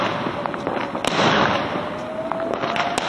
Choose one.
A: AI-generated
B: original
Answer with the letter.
B